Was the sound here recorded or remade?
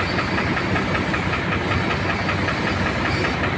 recorded